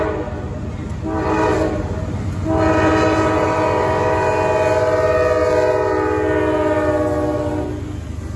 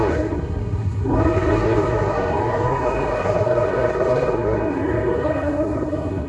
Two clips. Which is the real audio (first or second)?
first